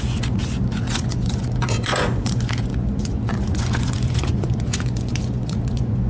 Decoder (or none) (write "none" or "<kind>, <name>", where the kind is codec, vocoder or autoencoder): vocoder, Vocos